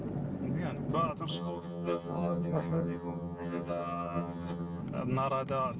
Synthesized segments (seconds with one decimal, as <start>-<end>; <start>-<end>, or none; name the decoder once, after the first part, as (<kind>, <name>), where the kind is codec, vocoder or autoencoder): 1.3-4.8 (vocoder, HiFi-GAN)